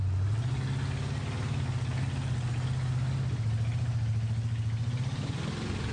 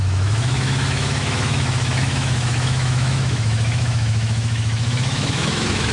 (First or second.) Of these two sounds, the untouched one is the first